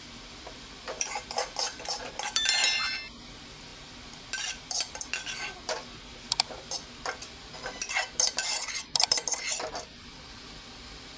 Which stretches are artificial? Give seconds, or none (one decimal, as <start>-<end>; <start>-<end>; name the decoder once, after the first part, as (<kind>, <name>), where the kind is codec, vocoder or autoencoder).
0.0-11.2 (vocoder, BigVGAN v2)